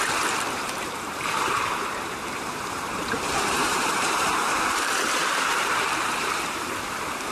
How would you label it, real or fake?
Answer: fake